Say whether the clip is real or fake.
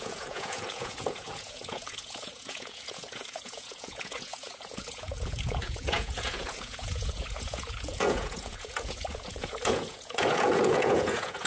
fake